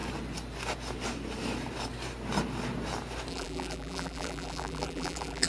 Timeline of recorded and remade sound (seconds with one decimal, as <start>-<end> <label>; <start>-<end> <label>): 0.0-3.3 recorded; 3.3-5.5 remade